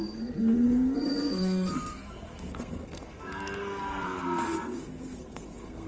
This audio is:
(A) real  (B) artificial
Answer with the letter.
B